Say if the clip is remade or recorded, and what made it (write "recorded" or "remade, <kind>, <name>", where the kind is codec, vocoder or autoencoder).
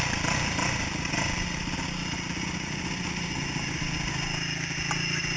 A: recorded